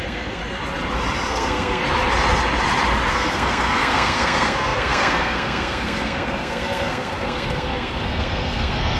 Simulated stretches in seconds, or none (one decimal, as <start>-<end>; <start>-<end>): 0.0-0.4; 1.3-1.8; 3.1-9.0

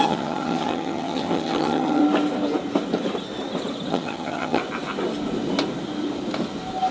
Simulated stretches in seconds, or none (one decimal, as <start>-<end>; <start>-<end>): 0.0-2.0; 3.9-4.6

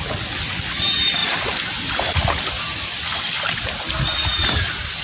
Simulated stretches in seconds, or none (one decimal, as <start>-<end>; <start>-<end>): none